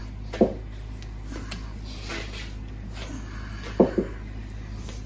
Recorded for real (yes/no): yes